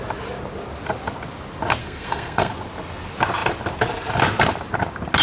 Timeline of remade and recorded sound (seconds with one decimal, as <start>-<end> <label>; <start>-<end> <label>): 0.0-1.8 recorded; 1.8-2.5 remade; 2.5-5.2 recorded